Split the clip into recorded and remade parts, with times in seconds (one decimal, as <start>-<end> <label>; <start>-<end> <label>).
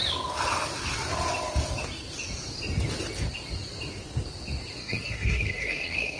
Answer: 0.0-4.8 recorded; 4.8-6.2 remade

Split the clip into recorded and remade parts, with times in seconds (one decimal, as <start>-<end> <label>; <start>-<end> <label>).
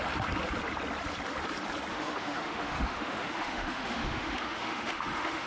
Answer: 0.0-1.9 recorded; 1.9-5.5 remade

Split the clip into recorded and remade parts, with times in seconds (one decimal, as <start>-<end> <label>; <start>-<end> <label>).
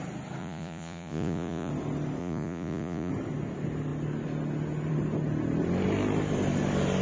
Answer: 0.0-0.4 recorded; 0.4-1.7 remade; 1.7-2.2 recorded; 2.2-3.1 remade; 3.1-7.0 recorded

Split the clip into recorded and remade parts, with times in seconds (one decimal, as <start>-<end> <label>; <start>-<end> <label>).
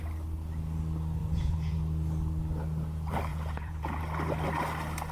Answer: 0.0-1.2 recorded; 1.2-1.8 remade; 1.8-3.3 recorded; 3.3-4.0 remade; 4.0-5.1 recorded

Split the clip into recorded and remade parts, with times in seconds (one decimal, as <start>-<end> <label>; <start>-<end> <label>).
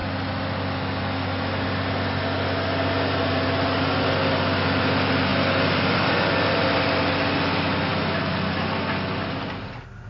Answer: 0.0-10.1 recorded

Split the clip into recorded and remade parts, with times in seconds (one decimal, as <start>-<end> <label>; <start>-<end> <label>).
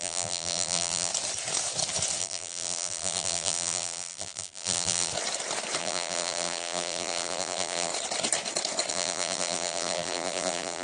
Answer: 0.0-1.1 remade; 1.1-2.2 recorded; 2.2-5.1 remade; 5.1-5.8 recorded; 5.8-7.9 remade; 7.9-8.9 recorded; 8.9-10.8 remade